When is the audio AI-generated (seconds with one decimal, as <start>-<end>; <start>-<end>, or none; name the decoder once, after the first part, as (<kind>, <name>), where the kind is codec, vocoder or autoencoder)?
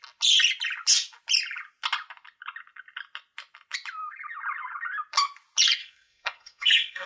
5.8-7.1 (codec, SNAC)